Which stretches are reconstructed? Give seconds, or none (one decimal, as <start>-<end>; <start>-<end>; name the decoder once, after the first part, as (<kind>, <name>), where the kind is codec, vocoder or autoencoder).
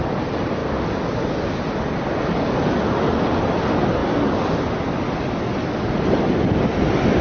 none